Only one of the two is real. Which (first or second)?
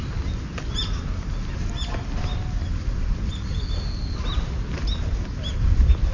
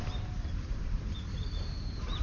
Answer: first